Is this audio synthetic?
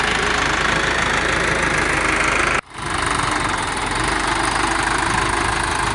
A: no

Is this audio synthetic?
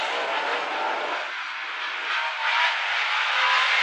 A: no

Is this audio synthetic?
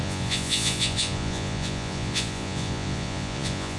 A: yes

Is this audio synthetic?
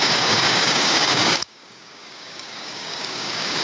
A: yes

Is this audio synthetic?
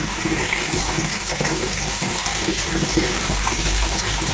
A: yes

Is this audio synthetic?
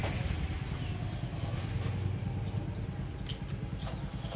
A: no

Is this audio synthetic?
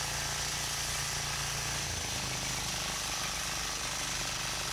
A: no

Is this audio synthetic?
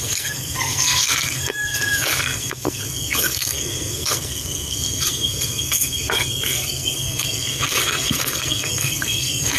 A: yes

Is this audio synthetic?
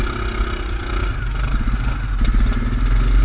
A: no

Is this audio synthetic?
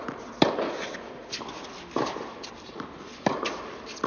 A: no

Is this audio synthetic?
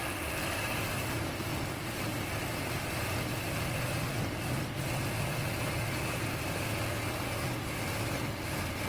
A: no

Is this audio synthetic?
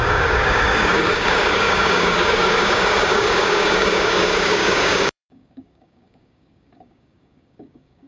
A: yes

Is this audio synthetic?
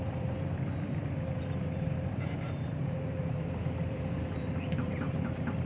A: yes